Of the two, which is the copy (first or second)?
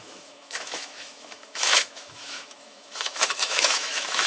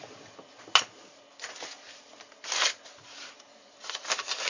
first